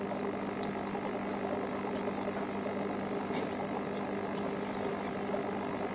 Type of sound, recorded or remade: recorded